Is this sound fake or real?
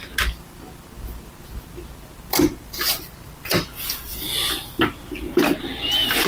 real